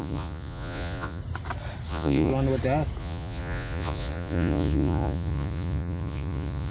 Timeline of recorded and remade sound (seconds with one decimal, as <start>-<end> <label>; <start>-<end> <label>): 0.0-1.2 remade; 1.2-1.9 recorded; 1.9-2.3 remade; 2.3-3.0 recorded; 3.0-6.7 remade